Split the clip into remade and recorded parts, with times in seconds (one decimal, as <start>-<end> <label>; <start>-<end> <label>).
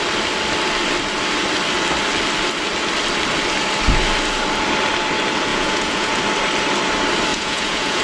0.0-5.5 recorded; 5.5-6.2 remade; 6.2-7.3 recorded; 7.3-8.0 remade